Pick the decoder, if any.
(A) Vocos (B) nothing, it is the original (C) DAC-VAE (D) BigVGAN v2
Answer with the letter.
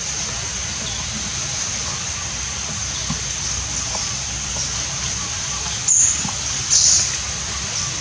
B